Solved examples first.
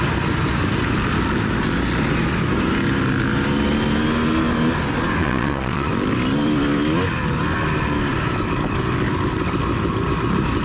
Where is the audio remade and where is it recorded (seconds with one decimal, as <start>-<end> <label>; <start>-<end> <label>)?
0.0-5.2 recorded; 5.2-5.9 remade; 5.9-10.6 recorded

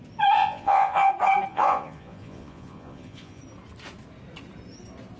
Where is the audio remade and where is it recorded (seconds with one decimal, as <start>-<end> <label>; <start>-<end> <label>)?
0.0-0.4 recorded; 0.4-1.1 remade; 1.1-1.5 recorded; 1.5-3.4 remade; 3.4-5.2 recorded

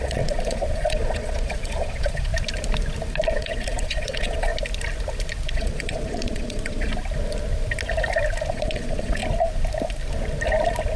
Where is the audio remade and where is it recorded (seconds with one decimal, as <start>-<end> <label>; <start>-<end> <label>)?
0.0-2.3 remade; 2.3-3.3 recorded; 3.3-4.5 remade; 4.5-5.5 recorded; 5.5-6.9 remade; 6.9-8.5 recorded; 8.5-9.2 remade; 9.2-11.0 recorded

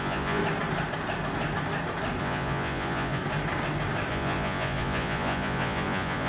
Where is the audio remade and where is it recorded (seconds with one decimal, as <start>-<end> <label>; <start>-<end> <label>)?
0.0-0.4 remade; 0.4-2.2 recorded; 2.2-3.2 remade; 3.2-4.1 recorded; 4.1-6.3 remade

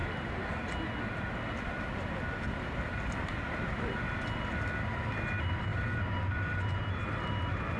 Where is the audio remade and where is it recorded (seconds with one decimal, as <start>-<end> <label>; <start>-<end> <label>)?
0.0-7.8 recorded

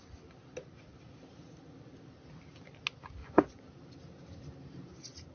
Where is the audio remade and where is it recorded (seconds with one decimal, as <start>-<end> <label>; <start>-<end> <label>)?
0.0-3.2 recorded; 3.2-3.7 remade; 3.7-5.3 recorded

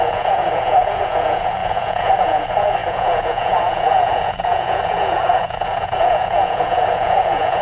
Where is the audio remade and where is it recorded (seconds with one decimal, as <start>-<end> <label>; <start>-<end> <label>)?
0.0-7.6 remade